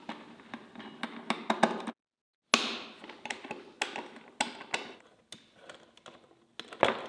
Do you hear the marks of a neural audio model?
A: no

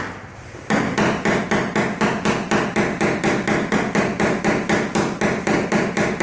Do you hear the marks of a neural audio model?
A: no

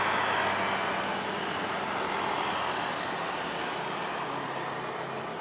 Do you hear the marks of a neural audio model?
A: no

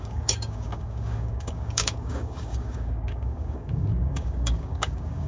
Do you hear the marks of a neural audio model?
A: yes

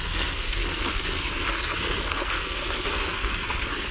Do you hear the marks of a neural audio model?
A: yes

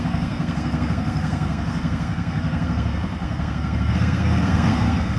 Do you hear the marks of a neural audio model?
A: yes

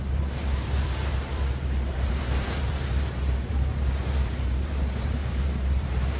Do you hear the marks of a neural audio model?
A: yes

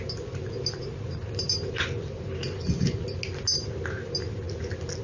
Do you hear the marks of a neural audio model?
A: no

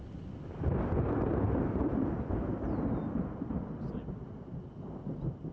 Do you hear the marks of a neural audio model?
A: no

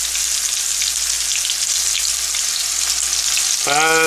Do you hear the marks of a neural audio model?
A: no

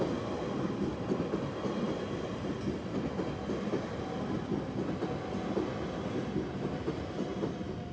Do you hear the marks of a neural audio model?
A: no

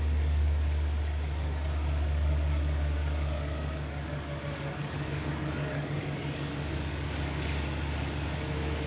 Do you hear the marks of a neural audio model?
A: yes